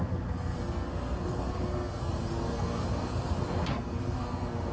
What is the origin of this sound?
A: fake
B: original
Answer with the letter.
A